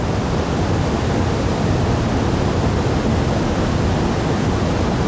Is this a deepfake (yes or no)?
no